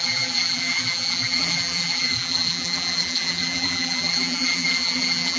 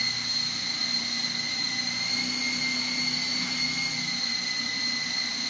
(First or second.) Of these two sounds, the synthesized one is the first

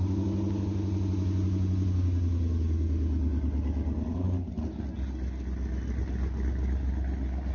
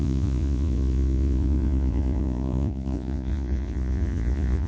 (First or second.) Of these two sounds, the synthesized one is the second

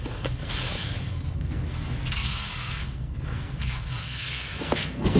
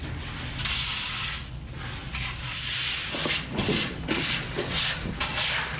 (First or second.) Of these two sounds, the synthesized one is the first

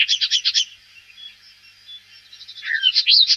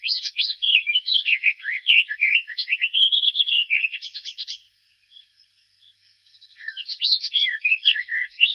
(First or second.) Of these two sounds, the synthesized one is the second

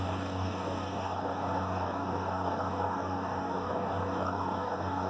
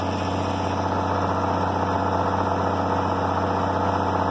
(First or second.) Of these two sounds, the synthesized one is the first